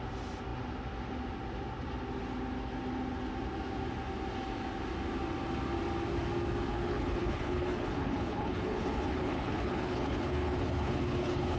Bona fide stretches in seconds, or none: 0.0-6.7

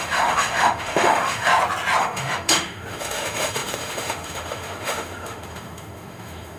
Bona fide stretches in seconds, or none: 1.5-2.0

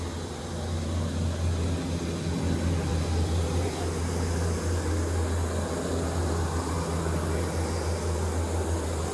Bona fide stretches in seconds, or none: 0.0-2.9; 3.7-9.1

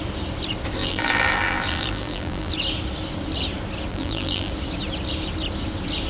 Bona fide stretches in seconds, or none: 0.0-0.8; 2.5-3.9; 4.5-6.1

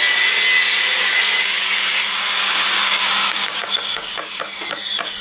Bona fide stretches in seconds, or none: 0.0-1.0; 4.1-5.2

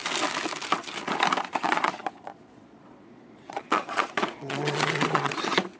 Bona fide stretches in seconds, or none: 0.0-1.6

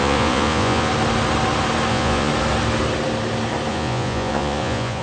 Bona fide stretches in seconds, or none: 0.9-1.9; 2.3-3.7